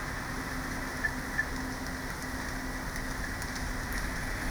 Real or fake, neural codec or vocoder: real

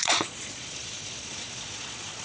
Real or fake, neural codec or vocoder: fake, vocoder, Vocos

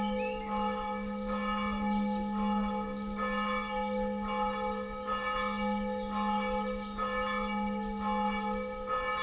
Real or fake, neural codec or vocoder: real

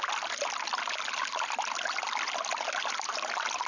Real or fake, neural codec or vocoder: real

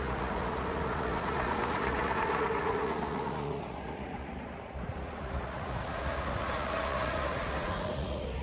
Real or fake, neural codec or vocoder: fake, vocoder, Vocos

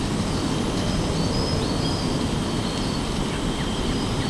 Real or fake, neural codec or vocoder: real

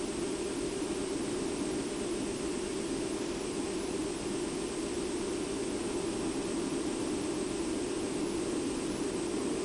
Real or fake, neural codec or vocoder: real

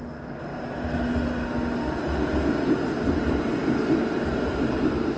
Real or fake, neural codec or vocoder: real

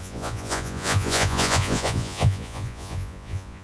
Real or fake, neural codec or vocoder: fake, vocoder, Vocos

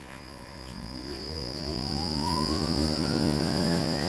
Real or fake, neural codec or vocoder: fake, vocoder, Vocos